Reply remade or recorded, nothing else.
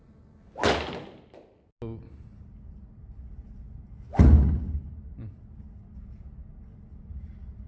recorded